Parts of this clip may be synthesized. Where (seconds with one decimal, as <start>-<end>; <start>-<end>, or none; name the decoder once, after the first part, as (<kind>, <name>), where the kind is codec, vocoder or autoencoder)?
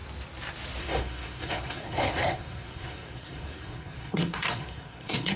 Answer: 0.8-5.4 (codec, SNAC)